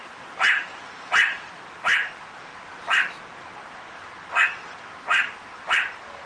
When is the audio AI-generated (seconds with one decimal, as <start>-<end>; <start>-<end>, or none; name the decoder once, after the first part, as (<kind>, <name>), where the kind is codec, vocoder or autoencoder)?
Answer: 0.0-6.3 (vocoder, BigVGAN v2)